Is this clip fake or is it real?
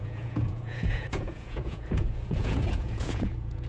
fake